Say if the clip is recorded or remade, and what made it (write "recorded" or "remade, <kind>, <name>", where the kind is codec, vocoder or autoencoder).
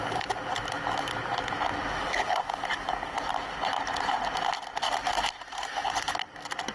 recorded